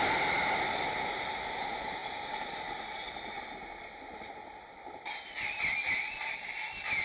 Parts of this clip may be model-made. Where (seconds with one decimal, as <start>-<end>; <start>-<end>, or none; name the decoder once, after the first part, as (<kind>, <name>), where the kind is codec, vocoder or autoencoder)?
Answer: none